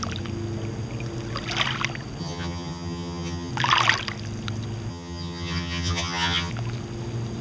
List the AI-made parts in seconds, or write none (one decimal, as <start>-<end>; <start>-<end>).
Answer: 2.2-3.5; 4.9-6.5